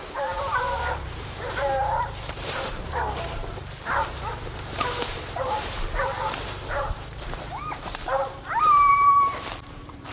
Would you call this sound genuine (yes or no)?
no